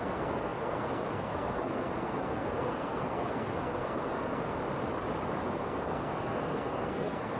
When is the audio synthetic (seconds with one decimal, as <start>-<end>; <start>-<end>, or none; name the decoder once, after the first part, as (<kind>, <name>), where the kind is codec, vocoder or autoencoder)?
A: 0.0-4.6 (codec, SNAC); 5.5-7.4